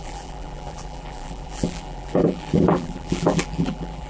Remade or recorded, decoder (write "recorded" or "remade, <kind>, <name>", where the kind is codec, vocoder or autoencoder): remade, vocoder, BigVGAN v2